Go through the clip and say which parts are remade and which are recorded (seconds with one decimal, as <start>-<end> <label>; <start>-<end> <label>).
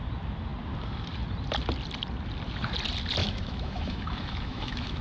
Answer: 0.0-3.2 recorded; 3.2-5.0 remade